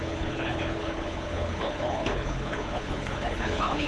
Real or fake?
fake